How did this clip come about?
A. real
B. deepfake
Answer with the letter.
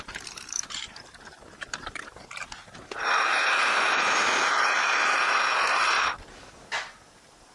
B